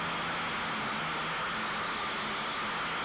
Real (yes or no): yes